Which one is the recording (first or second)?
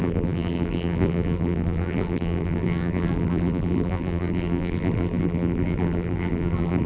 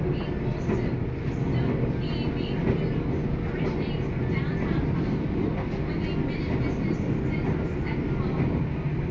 second